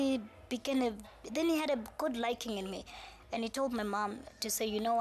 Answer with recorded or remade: recorded